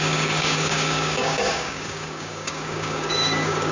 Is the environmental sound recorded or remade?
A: remade